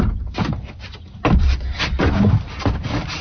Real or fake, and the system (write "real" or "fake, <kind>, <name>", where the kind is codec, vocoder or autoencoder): real